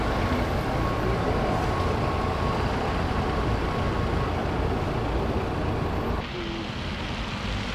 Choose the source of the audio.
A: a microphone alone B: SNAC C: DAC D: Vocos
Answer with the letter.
A